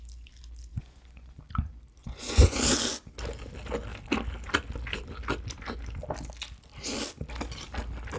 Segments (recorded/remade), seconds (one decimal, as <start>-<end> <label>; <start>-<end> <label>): 0.0-0.7 recorded; 0.7-1.4 remade; 1.4-2.0 recorded; 2.0-2.6 remade; 2.6-8.2 recorded